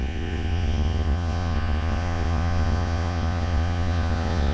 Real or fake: fake